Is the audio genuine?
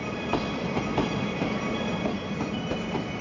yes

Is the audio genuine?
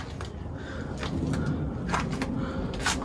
yes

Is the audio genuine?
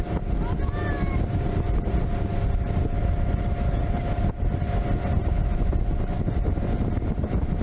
yes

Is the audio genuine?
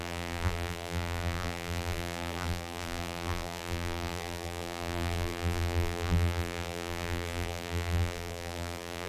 no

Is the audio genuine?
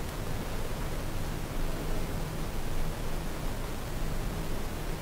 yes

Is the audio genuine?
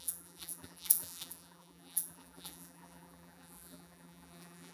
no